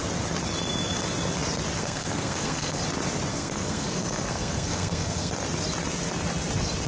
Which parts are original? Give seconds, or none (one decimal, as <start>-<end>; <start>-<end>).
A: 0.0-1.8; 2.8-3.3; 5.3-6.9